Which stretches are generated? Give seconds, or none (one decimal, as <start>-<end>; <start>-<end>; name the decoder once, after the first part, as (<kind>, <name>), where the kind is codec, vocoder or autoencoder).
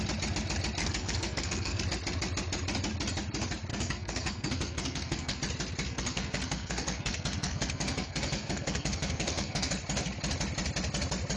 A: 0.8-1.8 (codec, SNAC); 3.7-5.4; 5.9-9.7